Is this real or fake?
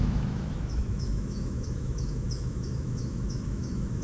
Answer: fake